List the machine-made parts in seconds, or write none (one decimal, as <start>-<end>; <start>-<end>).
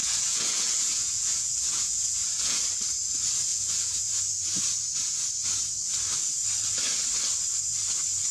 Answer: 0.0-2.6; 3.5-4.2